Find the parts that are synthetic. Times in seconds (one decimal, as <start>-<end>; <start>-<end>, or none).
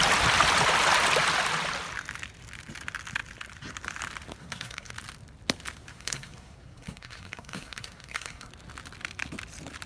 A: 4.4-4.9; 5.9-8.5